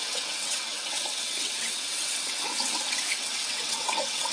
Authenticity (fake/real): fake